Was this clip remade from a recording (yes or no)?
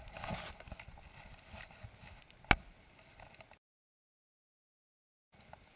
no